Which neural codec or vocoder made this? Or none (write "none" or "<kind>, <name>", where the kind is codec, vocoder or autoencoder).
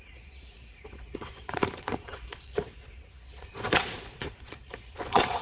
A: vocoder, Vocos